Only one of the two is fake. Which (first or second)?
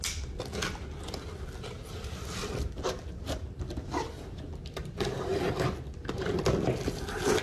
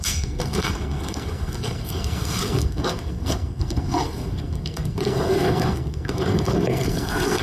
second